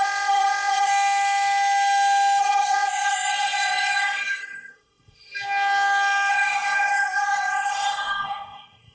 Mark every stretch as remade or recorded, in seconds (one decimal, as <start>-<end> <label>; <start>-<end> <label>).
0.0-0.9 remade; 0.9-2.4 recorded; 2.4-5.3 remade; 5.3-6.3 recorded; 6.3-8.9 remade